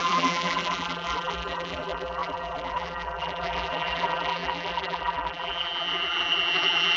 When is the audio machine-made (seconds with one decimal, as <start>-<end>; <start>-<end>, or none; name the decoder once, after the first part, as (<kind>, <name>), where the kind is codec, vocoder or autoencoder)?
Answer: 0.0-7.0 (vocoder, BigVGAN v2)